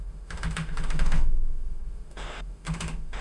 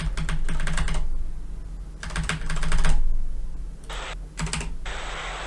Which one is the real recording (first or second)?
second